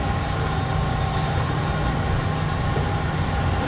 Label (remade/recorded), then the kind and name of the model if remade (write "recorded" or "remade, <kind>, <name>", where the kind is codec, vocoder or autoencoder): recorded